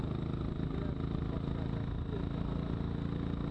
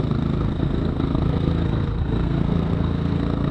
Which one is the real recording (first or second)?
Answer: first